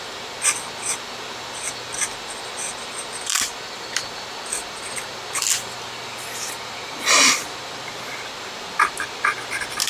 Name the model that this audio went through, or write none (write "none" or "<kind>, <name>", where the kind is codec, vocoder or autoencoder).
none